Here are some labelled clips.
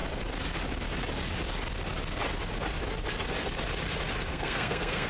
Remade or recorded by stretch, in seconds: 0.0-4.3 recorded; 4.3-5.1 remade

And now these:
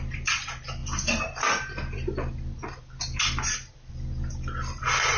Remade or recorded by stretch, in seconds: 0.0-5.2 recorded